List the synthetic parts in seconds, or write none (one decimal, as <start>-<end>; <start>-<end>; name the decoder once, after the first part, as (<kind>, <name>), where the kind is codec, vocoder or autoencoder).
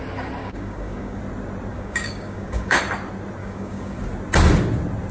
0.4-1.2 (codec, DAC); 1.7-2.8; 3.4-4.0